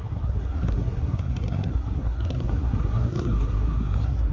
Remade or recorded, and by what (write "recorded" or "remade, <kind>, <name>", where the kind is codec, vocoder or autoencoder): remade, codec, SNAC